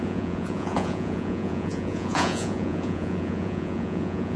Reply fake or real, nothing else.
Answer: fake